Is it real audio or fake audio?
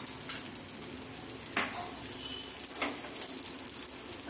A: real